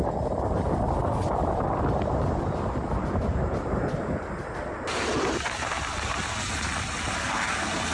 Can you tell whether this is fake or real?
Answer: real